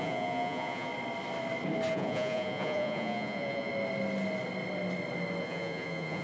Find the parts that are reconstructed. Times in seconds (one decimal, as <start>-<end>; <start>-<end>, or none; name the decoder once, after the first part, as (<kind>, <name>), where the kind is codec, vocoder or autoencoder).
0.0-0.9 (vocoder, Vocos); 1.9-3.7; 5.4-6.2